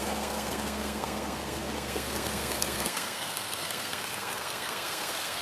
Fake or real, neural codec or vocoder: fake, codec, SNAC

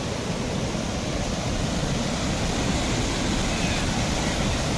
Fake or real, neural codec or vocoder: real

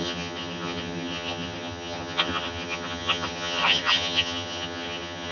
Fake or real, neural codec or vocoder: fake, vocoder, HiFi-GAN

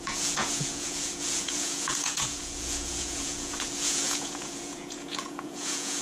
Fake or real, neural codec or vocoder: fake, vocoder, Vocos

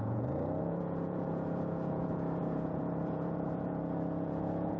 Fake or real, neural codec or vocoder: fake, vocoder, Vocos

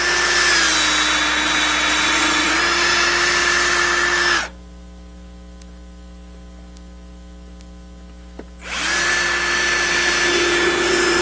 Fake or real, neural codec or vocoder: real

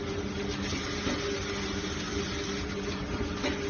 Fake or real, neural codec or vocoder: real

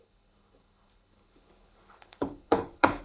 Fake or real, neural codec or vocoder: fake, codec, HILCodec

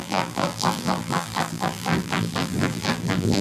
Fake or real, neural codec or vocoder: fake, vocoder, BigVGAN v2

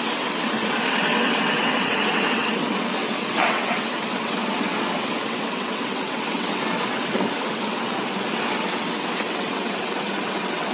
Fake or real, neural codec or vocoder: fake, vocoder, WaveNeXt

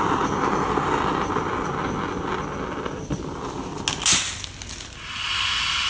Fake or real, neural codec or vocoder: real